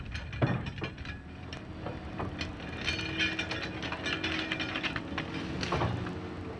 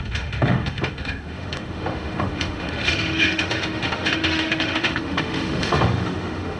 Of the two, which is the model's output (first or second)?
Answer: second